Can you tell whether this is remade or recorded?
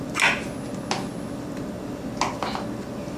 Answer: recorded